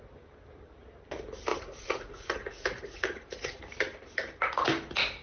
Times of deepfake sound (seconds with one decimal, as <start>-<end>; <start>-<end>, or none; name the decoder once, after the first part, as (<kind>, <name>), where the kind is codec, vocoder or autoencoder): 1.5-3.6 (vocoder, Vocos)